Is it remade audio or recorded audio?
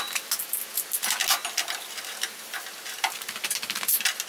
recorded